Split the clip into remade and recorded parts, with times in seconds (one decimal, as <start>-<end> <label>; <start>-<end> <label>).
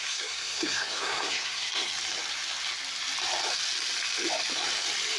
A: 0.0-1.9 remade; 1.9-5.2 recorded